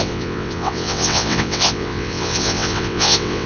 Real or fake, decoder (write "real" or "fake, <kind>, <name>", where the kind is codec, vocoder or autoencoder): fake, vocoder, WaveNeXt